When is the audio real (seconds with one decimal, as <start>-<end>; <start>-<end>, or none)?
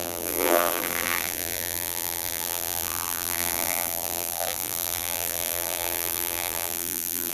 none